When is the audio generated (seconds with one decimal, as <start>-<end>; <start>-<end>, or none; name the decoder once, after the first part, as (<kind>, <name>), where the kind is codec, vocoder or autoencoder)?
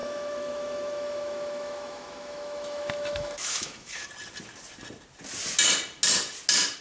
0.0-4.1 (autoencoder, DAC-VAE)